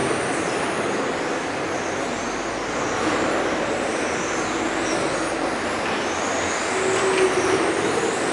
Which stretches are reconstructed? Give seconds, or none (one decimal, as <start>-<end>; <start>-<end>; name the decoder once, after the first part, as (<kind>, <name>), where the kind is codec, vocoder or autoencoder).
0.0-1.6 (vocoder, BigVGAN v2)